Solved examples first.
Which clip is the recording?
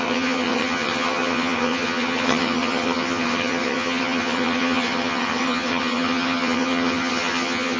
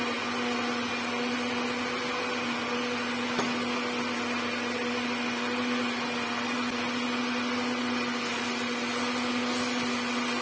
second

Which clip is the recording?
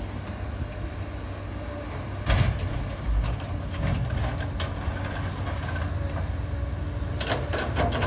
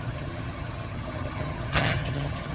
first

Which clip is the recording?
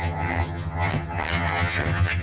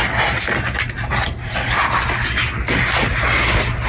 second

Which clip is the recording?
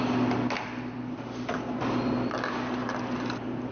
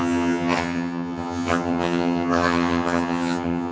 first